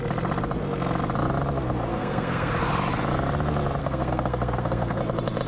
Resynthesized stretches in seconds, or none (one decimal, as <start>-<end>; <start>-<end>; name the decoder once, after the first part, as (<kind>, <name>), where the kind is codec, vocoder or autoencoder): 1.9-2.5 (codec, SNAC); 3.8-5.0